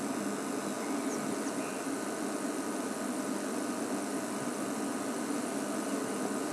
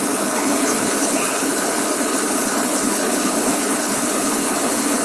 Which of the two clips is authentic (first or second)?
first